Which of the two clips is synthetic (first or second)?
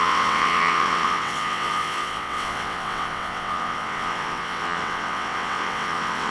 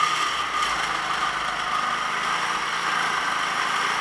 first